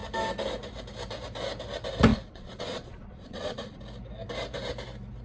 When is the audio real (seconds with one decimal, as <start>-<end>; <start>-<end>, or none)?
0.0-2.1; 3.8-5.2